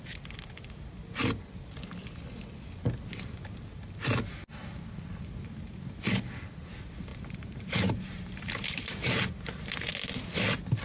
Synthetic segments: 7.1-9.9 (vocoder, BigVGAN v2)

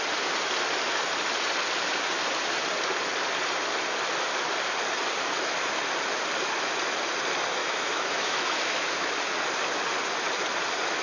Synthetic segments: 7.6-9.1 (autoencoder, DAC-VAE)

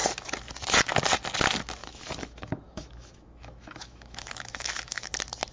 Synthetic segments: 1.8-5.1 (autoencoder, DAC-VAE)

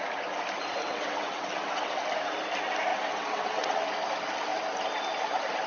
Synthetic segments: 0.8-2.0 (vocoder, WaveNeXt); 2.9-3.9

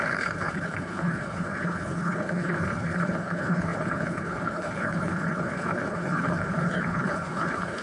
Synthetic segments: 0.0-7.8 (codec, HILCodec)

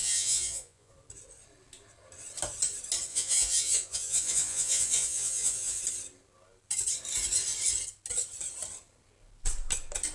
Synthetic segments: 0.0-0.9 (vocoder, Vocos); 3.1-5.8

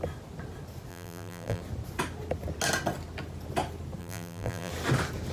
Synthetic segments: 0.9-1.6 (vocoder, BigVGAN v2); 4.0-4.7